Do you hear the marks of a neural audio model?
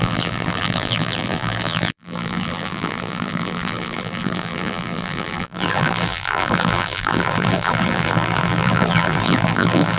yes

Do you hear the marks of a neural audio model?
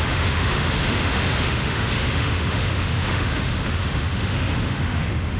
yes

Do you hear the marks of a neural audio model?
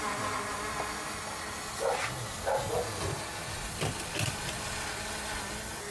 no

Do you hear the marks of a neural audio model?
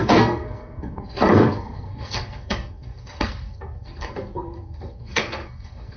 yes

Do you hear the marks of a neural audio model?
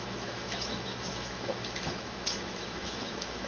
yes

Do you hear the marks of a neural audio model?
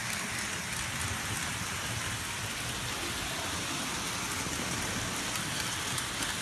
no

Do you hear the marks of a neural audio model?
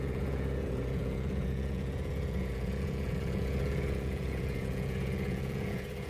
yes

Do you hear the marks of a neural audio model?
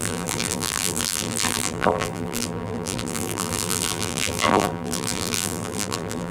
yes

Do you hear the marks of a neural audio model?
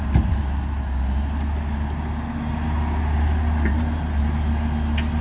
no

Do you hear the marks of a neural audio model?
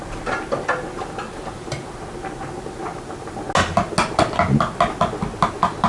no